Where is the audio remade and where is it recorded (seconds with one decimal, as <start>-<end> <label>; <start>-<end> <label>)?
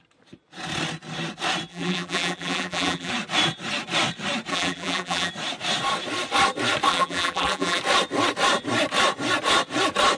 0.0-1.7 recorded; 1.7-3.1 remade; 3.1-4.5 recorded; 4.5-5.3 remade; 5.3-6.9 recorded; 6.9-7.8 remade; 7.8-10.2 recorded